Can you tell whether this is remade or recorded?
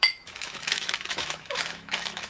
remade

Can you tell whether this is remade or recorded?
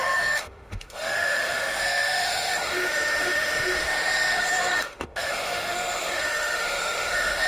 remade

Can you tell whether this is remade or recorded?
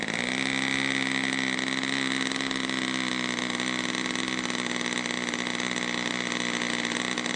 recorded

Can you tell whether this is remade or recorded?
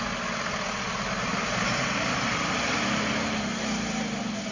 recorded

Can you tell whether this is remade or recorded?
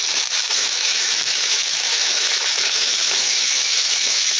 remade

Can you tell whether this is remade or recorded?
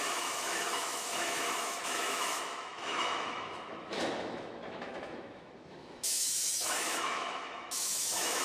remade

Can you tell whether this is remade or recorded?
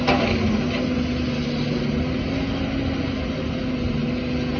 recorded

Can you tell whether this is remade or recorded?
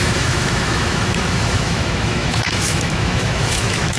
remade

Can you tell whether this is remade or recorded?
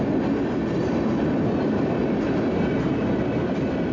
recorded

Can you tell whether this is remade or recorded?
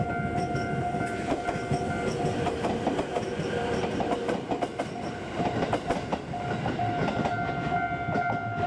recorded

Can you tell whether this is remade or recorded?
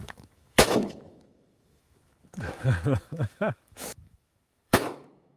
remade